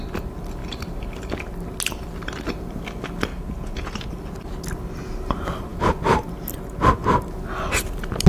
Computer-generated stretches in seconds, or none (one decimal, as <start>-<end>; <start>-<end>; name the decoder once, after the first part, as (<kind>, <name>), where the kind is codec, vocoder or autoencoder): 3.3-4.1 (vocoder, Vocos)